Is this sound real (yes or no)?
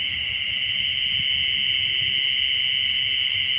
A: yes